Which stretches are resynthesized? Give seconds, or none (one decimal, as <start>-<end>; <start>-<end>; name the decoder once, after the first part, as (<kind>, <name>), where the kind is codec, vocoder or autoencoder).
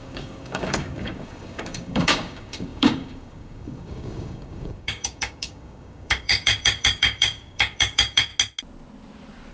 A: 0.0-8.3 (codec, DAC)